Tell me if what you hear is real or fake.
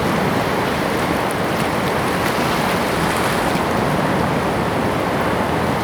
real